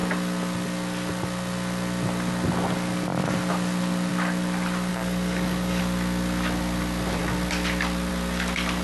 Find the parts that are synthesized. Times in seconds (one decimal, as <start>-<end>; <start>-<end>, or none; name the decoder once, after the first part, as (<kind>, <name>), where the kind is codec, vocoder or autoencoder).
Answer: 4.9-5.8 (codec, DAC)